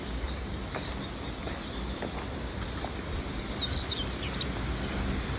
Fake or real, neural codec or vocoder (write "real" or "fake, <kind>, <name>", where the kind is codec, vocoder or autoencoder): real